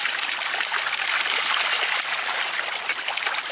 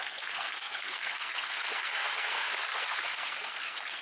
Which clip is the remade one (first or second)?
second